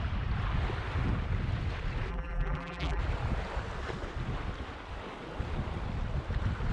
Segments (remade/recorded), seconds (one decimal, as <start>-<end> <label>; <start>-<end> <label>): 0.0-2.1 recorded; 2.1-3.0 remade; 3.0-6.7 recorded